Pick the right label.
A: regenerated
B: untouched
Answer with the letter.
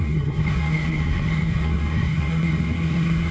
A